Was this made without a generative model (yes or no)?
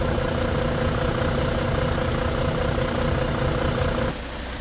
yes